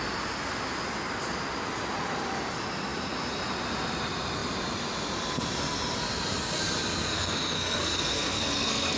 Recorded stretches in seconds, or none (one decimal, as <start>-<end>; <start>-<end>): 0.0-7.1